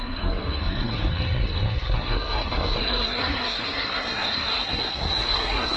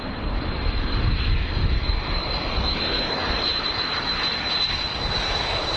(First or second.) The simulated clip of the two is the first